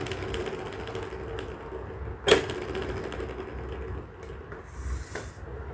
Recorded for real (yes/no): yes